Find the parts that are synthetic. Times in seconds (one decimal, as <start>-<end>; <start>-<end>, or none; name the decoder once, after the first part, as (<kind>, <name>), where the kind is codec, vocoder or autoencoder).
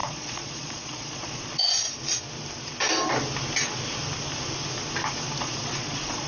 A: 0.0-1.6 (vocoder, Vocos); 5.4-6.3